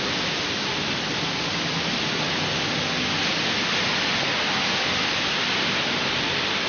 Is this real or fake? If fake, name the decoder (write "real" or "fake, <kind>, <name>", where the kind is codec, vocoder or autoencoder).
real